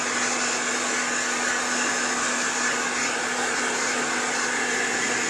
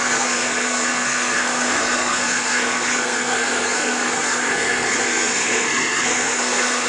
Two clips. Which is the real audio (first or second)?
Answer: first